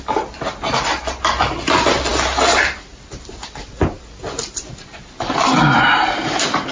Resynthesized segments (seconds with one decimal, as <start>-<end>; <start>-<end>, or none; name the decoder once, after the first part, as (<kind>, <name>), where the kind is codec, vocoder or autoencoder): none